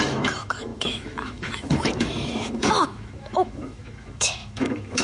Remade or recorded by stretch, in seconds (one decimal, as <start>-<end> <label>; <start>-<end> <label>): 0.0-5.0 remade